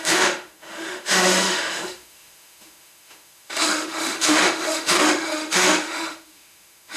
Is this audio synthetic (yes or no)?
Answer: yes